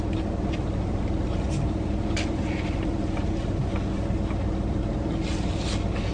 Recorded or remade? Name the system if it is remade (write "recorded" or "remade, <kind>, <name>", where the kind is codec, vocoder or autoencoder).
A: recorded